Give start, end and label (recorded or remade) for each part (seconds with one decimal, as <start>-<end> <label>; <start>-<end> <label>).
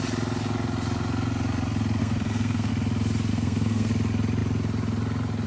0.0-2.0 recorded; 2.0-2.7 remade; 2.7-3.3 recorded; 3.3-3.9 remade; 3.9-5.5 recorded